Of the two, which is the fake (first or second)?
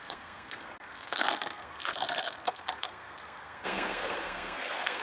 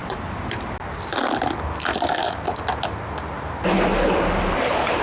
first